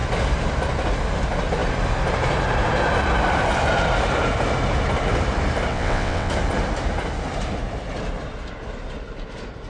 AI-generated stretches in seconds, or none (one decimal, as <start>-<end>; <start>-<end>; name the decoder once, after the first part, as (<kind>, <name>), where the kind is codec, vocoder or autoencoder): 5.7-6.3 (vocoder, WaveNeXt)

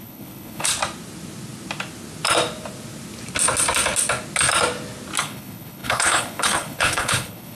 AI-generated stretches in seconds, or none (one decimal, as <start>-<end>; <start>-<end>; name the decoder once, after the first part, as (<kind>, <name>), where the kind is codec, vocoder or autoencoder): 0.0-0.7 (codec, HILCodec); 5.2-7.5

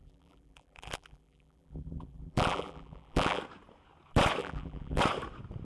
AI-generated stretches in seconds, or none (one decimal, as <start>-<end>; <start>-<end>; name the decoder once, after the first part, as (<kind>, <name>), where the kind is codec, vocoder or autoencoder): 0.0-3.4 (vocoder, BigVGAN v2); 4.4-5.0

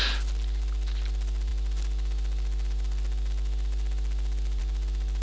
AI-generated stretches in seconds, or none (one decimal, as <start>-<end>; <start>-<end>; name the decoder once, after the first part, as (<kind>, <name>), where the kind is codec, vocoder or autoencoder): none